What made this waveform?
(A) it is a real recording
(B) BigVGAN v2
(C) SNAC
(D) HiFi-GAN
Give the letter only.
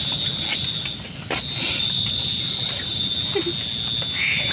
A